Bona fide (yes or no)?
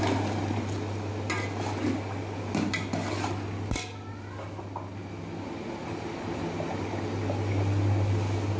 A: yes